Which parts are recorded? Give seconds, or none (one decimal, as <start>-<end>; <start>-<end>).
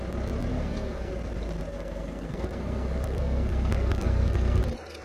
0.0-0.5; 1.1-1.7; 4.6-5.0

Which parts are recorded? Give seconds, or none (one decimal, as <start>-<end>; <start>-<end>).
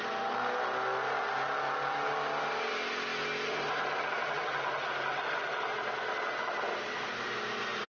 0.0-7.9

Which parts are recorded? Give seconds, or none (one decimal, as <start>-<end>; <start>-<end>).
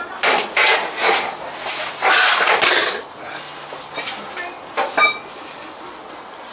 0.0-6.5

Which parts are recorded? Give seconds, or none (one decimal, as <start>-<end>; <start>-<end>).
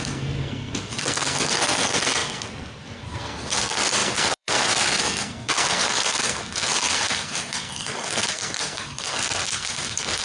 none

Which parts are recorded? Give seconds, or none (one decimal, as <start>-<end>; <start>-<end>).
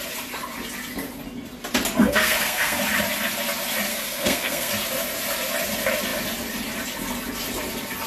0.0-2.0; 2.8-3.9; 4.7-8.1